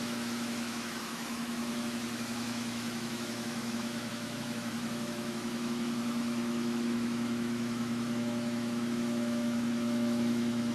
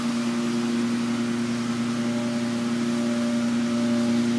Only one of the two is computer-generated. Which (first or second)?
first